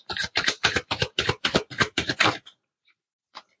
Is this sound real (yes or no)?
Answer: no